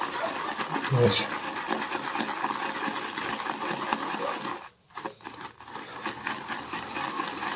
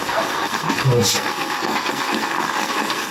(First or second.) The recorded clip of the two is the first